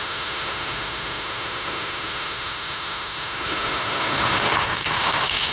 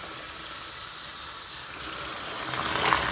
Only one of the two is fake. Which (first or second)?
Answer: first